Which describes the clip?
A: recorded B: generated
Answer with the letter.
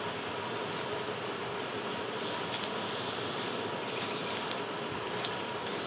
A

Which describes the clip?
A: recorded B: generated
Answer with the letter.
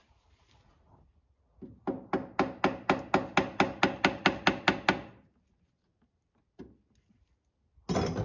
A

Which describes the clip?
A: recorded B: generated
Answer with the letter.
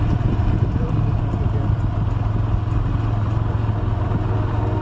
A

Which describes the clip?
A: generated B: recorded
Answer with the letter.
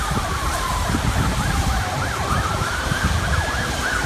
A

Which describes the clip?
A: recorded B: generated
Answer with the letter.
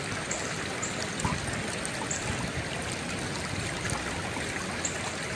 A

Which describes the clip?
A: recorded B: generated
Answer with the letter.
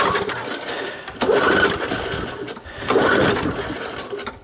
A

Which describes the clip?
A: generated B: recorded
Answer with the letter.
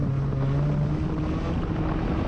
B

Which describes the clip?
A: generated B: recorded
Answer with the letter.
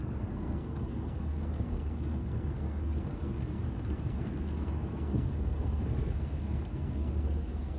A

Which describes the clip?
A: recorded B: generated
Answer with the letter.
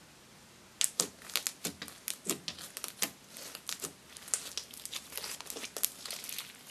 A